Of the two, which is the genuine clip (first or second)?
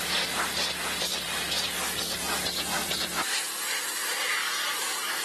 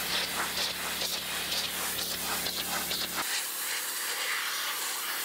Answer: second